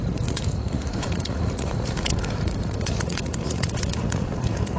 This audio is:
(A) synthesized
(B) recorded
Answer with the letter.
A